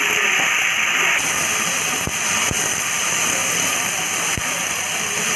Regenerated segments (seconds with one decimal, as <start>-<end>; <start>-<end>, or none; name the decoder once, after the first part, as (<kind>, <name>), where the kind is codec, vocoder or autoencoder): none